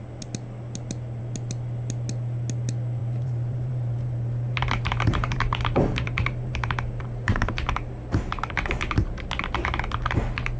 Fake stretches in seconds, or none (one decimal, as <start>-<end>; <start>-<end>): 3.0-7.9